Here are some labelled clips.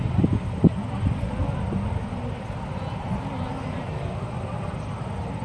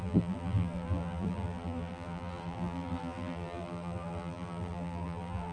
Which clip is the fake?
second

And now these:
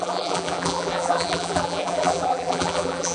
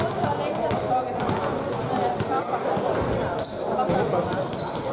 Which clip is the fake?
first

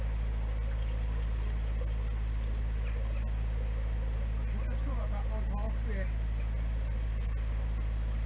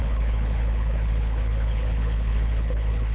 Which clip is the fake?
second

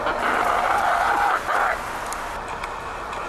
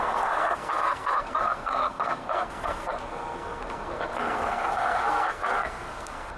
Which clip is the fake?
second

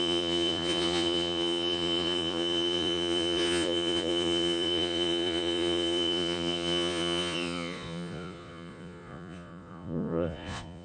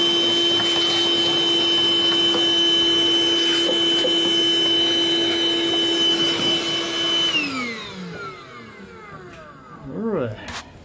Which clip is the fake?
first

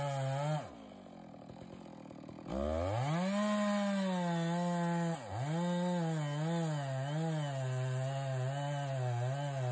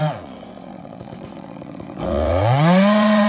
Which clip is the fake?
second